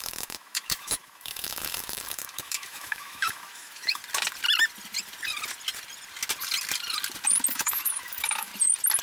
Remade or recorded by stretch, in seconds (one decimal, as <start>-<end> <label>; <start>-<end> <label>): 0.0-4.0 remade; 4.0-7.5 recorded; 7.5-8.5 remade; 8.5-9.0 recorded